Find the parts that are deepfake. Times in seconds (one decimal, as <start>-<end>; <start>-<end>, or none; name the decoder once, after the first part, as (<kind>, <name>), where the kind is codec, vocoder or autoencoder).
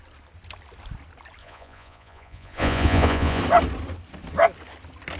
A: 1.4-3.4 (vocoder, Vocos)